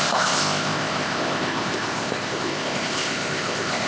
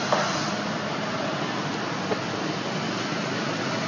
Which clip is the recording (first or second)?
second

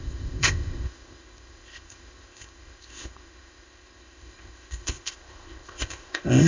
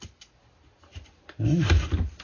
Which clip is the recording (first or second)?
second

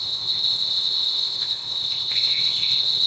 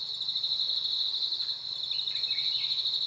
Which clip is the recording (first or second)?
second